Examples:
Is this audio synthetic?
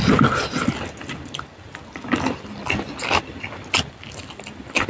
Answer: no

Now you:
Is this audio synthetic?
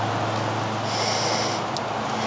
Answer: no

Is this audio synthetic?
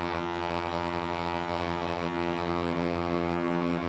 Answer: yes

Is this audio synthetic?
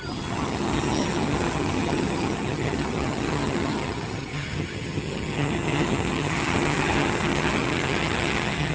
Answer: yes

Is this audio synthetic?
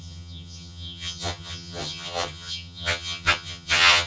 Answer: yes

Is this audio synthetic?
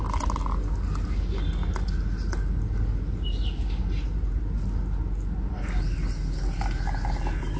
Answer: no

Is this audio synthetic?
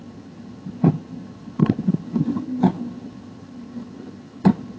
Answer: yes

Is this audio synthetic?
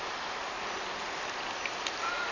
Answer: no